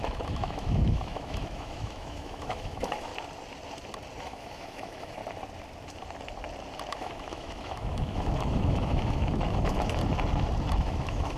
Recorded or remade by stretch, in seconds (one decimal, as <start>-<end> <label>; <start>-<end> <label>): 0.0-3.1 remade; 3.1-4.2 recorded; 4.2-5.2 remade; 5.2-6.9 recorded; 6.9-10.0 remade; 10.0-10.8 recorded; 10.8-11.4 remade